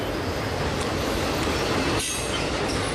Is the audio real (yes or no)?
yes